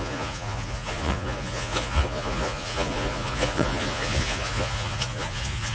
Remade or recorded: remade